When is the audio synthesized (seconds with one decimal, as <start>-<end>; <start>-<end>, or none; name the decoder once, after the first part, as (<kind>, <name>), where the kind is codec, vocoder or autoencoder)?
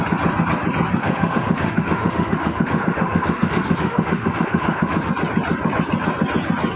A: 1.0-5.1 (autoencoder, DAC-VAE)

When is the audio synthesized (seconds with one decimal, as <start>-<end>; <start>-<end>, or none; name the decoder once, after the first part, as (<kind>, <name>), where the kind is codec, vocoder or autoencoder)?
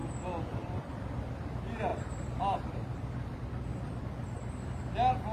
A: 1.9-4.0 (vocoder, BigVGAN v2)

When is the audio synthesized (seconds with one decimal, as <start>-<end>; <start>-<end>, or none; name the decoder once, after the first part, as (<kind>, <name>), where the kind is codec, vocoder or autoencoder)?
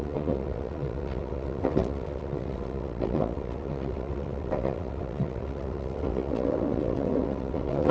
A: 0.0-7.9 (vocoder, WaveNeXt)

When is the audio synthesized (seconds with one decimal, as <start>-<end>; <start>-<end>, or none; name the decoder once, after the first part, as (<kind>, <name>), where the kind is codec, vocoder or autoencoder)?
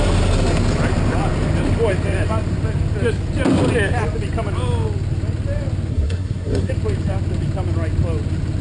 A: 5.9-6.7 (codec, SNAC)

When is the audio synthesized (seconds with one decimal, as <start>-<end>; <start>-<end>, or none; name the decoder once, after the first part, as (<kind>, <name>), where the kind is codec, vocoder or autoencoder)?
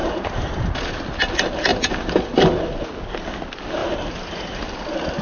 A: 0.0-0.7 (vocoder, BigVGAN v2); 3.8-4.8